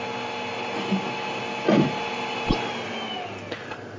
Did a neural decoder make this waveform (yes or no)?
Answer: no